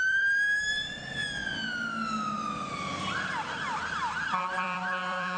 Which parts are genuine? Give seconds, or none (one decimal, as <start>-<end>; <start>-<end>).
1.2-4.4